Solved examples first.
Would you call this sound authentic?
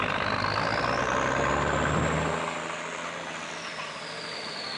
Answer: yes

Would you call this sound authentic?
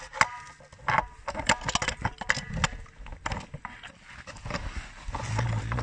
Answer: yes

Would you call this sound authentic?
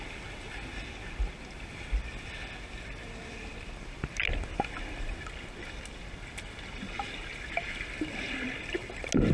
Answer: yes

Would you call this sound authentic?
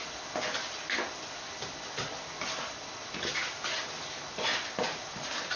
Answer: yes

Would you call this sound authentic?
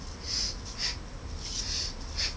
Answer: yes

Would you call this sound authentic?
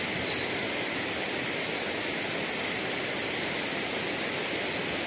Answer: yes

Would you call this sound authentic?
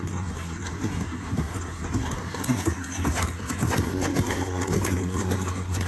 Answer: no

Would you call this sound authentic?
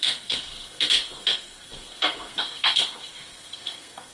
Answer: no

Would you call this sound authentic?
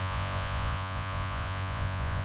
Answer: no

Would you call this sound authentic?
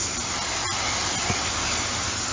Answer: yes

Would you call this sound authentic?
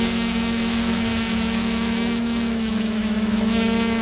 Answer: no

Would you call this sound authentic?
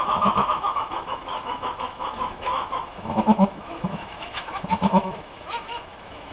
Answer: no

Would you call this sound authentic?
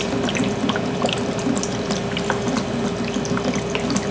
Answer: yes